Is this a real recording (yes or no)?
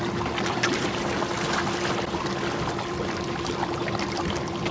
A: yes